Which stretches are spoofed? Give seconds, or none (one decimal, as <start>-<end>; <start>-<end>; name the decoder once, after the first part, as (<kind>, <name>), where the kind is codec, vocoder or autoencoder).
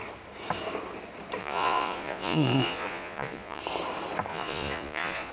1.4-3.6 (vocoder, Vocos); 4.3-5.3